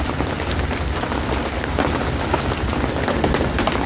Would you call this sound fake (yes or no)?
no